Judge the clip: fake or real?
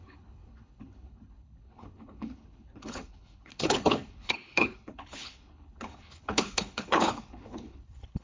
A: fake